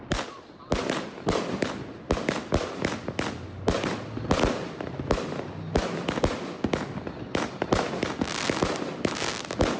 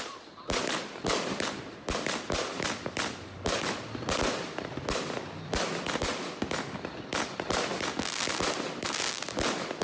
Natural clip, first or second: first